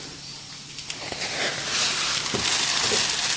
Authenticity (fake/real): real